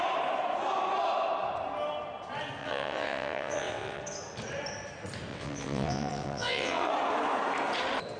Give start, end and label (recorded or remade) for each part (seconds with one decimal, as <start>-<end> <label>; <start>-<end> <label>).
0.0-2.6 recorded; 2.6-4.0 remade; 4.0-5.3 recorded; 5.3-6.9 remade; 6.9-8.2 recorded